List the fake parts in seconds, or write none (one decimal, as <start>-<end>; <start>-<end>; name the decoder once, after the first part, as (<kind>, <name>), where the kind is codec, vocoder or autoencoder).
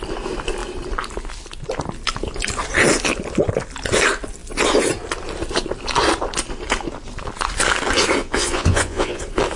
8.2-9.2 (vocoder, Vocos)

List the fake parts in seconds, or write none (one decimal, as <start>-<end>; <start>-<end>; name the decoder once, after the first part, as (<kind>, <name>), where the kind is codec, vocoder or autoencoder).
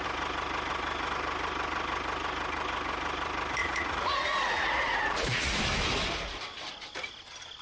3.6-5.6 (vocoder, Vocos)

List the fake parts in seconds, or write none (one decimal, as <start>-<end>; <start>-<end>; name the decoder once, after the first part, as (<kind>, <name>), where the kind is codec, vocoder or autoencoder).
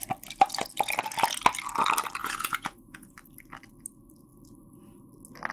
2.2-3.1 (vocoder, Vocos)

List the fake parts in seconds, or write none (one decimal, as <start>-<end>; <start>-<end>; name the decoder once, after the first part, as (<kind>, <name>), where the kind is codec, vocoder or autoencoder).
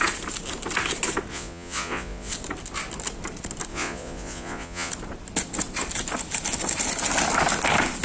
1.3-2.3 (vocoder, Vocos); 3.7-4.9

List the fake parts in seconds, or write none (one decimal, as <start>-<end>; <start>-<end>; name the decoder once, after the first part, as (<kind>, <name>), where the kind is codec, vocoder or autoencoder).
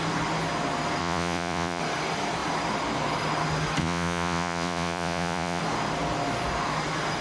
1.0-1.8 (vocoder, Vocos); 3.8-5.6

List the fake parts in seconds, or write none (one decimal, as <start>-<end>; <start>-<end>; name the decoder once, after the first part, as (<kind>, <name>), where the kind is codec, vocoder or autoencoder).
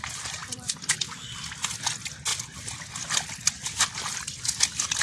none